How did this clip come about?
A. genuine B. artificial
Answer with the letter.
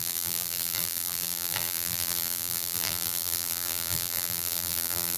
B